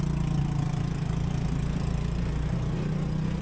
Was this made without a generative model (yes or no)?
yes